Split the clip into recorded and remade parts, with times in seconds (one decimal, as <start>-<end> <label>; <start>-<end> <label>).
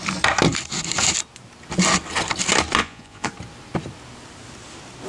0.0-2.8 recorded; 2.8-3.3 remade; 3.3-5.1 recorded